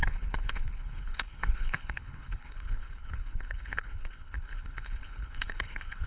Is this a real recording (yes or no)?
no